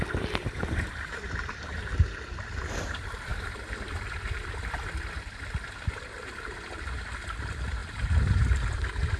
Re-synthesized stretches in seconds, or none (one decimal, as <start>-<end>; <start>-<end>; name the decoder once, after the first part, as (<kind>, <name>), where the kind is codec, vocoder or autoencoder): none